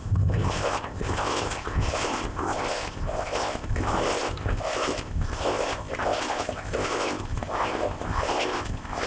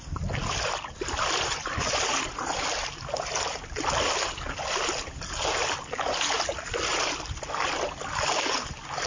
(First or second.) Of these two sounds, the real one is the second